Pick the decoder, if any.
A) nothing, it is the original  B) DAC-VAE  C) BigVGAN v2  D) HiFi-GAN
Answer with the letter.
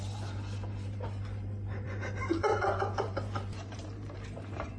C